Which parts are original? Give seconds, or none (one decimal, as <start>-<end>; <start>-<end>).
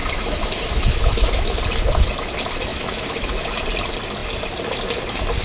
1.6-2.7; 3.6-5.4